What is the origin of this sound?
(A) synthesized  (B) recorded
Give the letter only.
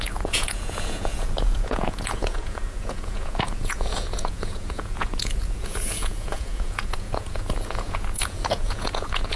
A